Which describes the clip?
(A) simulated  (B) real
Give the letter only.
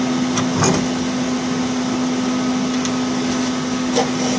B